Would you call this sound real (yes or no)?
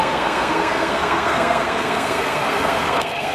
no